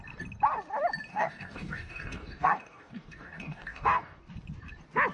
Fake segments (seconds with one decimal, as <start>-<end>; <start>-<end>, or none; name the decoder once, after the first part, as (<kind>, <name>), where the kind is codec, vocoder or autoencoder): 1.1-4.2 (codec, DAC)